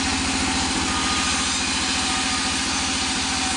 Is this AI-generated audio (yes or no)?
no